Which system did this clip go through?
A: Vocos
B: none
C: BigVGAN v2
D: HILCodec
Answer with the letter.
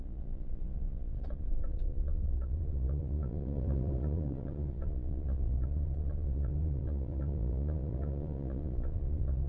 A